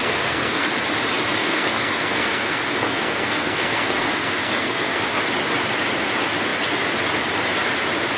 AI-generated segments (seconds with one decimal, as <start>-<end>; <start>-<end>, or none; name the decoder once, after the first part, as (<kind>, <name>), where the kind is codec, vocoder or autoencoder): 0.0-0.7 (codec, SNAC); 1.4-5.0